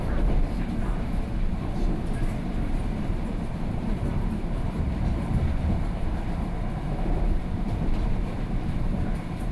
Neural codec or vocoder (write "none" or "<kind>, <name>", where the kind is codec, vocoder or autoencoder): vocoder, BigVGAN v2